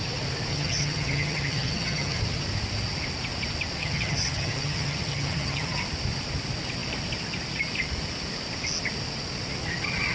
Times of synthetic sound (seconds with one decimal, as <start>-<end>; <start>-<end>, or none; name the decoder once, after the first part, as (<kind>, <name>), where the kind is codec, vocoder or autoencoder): 0.5-2.2 (vocoder, HiFi-GAN); 3.8-5.8